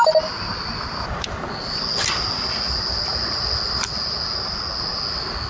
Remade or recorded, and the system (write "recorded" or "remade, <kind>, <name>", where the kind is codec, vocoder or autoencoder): recorded